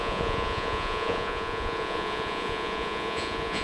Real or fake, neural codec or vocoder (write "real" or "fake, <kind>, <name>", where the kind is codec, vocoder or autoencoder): fake, vocoder, Vocos